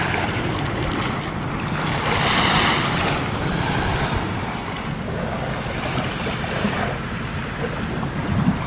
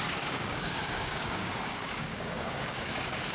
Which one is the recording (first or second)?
first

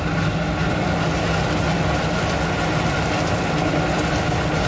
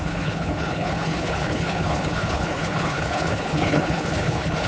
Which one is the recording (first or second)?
first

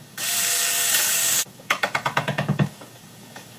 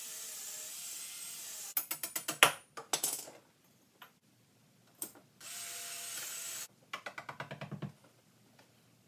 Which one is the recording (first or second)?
second